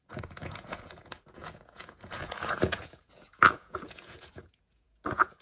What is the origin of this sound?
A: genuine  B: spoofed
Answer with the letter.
B